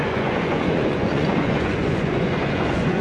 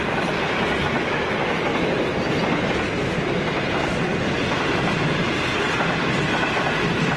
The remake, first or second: first